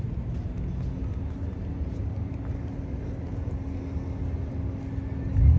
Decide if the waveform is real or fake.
real